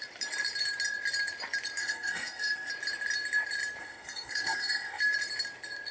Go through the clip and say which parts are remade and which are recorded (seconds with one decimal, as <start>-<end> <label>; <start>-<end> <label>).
0.0-1.8 recorded; 1.8-2.7 remade; 2.7-3.8 recorded; 3.8-5.0 remade; 5.0-5.9 recorded